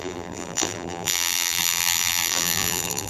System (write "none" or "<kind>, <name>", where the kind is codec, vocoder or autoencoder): vocoder, BigVGAN v2